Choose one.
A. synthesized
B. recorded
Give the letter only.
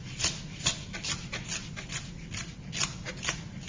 B